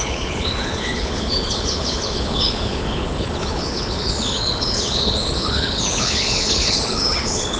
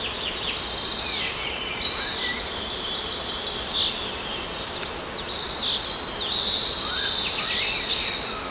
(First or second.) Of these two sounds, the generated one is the first